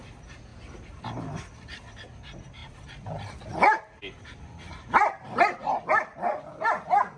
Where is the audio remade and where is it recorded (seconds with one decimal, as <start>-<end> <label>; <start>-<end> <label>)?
0.0-0.5 recorded; 0.5-1.0 remade; 1.0-2.6 recorded; 2.6-6.4 remade; 6.4-7.2 recorded